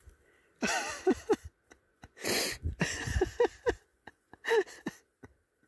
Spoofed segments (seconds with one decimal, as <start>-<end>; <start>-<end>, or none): 1.9-3.3; 3.9-4.7